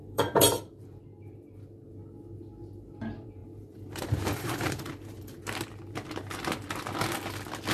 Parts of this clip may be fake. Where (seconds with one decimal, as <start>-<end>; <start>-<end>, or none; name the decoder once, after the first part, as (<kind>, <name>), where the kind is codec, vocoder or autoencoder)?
0.0-1.0 (vocoder, BigVGAN v2); 3.4-5.4